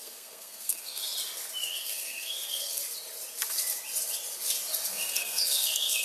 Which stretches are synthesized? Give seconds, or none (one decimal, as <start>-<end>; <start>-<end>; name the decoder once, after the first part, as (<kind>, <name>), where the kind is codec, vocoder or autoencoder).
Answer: 0.0-1.0 (codec, SNAC); 1.7-2.8; 4.9-6.0